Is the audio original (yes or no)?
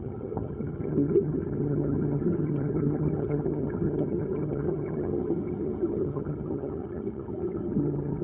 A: no